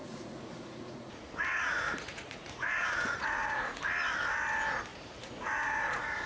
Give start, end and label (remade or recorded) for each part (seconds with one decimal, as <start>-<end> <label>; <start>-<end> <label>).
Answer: 0.0-3.8 remade; 3.8-4.9 recorded; 4.9-6.3 remade